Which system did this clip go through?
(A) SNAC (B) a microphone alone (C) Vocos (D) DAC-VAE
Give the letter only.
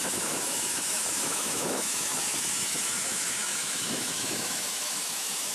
D